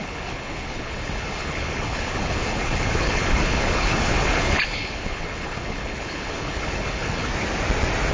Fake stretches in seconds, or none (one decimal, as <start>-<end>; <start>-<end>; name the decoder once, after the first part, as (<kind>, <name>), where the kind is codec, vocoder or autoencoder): 0.0-7.3 (codec, HILCodec)